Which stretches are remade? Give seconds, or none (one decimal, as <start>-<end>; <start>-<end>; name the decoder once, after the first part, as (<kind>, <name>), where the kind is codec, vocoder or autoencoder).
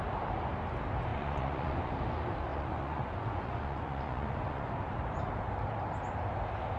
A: 1.1-1.9 (vocoder, Vocos); 2.5-4.7